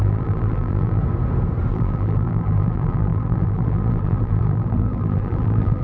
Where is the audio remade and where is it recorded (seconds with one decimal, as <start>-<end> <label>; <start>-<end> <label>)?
0.0-1.0 remade; 1.0-1.7 recorded; 1.7-5.8 remade